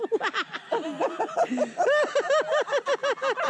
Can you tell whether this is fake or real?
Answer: real